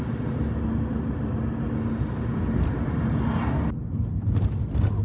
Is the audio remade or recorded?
recorded